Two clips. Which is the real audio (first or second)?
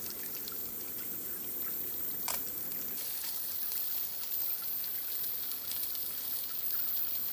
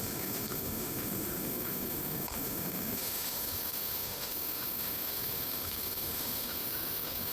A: first